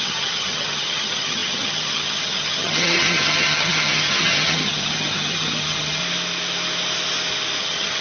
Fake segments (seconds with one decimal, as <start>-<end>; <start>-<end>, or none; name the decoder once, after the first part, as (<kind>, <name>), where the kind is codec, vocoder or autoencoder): 0.0-6.0 (vocoder, HiFi-GAN); 7.6-8.0